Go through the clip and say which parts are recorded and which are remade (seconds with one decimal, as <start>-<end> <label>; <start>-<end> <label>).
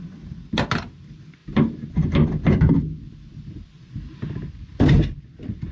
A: 0.0-5.7 recorded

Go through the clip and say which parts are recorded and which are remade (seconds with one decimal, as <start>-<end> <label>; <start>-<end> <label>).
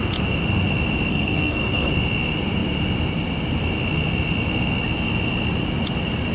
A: 0.0-1.1 recorded; 1.1-1.9 remade; 1.9-6.3 recorded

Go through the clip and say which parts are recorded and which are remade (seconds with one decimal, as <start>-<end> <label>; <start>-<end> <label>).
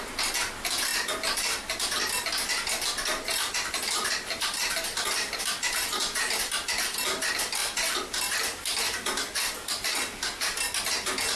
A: 0.0-11.4 recorded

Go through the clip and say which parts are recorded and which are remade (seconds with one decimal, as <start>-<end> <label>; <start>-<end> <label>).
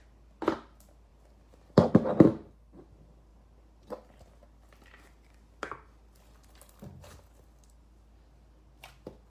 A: 0.0-9.3 recorded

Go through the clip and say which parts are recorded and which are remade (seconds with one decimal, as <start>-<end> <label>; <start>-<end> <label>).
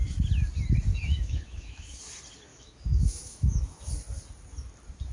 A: 0.0-0.9 recorded; 0.9-2.0 remade; 2.0-2.5 recorded; 2.5-3.9 remade; 3.9-5.1 recorded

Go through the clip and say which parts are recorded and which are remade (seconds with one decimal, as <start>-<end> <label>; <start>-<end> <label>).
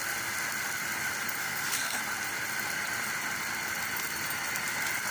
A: 0.0-1.4 recorded; 1.4-2.0 remade; 2.0-5.1 recorded